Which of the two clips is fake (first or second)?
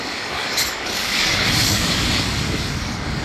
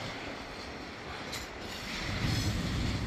first